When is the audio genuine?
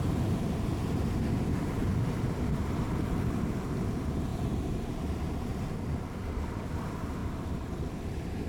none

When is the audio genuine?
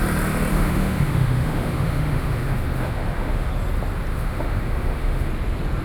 0.0-0.5; 3.5-4.1; 5.3-5.8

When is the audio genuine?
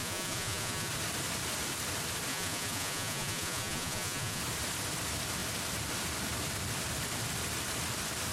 0.9-2.3; 4.4-8.3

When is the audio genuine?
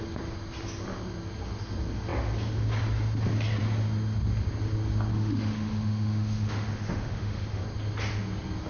0.0-5.1; 7.6-8.7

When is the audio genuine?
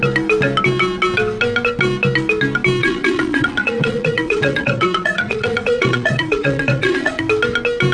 0.0-2.8; 7.2-7.9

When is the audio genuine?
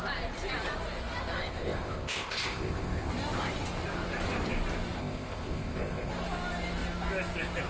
0.0-1.4; 3.1-5.0; 6.1-7.7